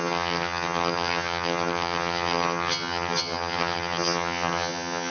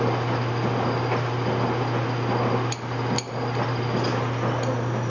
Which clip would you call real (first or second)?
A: second